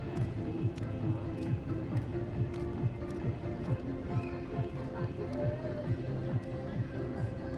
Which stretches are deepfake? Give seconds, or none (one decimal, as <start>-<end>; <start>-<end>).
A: 0.0-2.1; 3.2-3.9; 5.3-6.2; 6.9-7.6